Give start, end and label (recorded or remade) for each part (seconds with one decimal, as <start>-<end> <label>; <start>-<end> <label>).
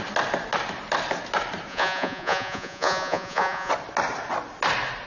0.0-1.7 recorded; 1.7-3.7 remade; 3.7-5.1 recorded